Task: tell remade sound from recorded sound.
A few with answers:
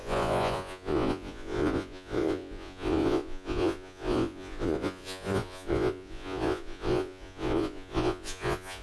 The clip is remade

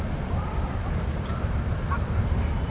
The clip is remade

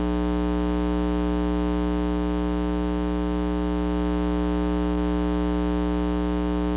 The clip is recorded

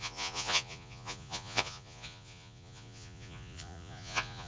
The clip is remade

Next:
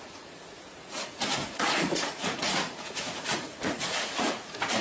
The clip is remade